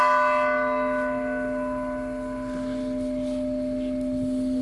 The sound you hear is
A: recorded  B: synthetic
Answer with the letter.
A